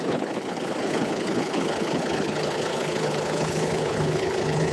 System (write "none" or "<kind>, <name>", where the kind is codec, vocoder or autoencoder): codec, HILCodec